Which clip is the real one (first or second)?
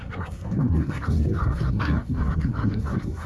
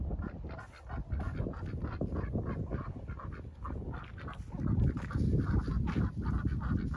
second